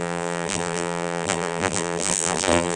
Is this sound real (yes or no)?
no